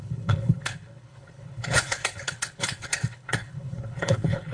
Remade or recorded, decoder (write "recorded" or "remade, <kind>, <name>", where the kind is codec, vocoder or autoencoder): remade, codec, HILCodec